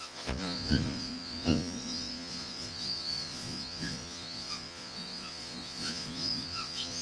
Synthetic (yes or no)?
yes